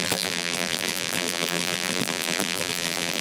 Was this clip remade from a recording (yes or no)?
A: yes